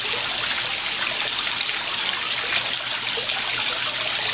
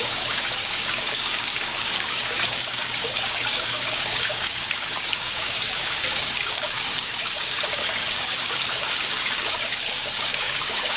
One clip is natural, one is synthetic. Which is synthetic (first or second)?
second